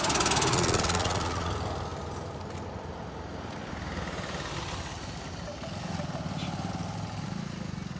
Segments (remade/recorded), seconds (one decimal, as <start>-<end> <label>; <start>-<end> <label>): 0.0-0.5 recorded; 0.5-1.5 remade; 1.5-8.0 recorded